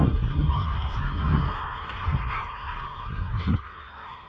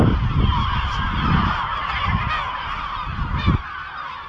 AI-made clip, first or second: first